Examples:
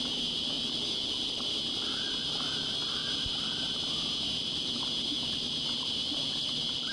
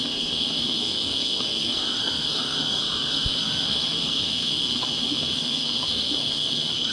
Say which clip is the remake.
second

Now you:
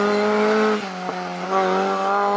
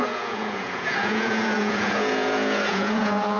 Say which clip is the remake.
second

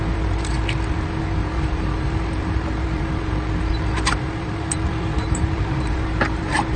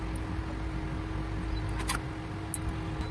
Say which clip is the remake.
first